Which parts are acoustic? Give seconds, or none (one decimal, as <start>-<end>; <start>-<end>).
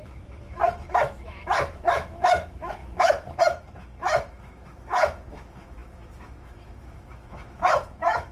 none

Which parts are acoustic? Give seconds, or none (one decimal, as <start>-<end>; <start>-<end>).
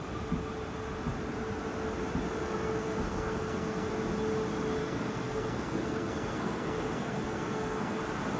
0.0-2.4; 3.9-4.8; 8.0-8.4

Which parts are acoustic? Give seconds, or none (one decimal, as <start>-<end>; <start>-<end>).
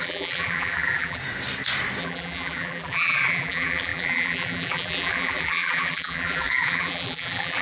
1.2-2.0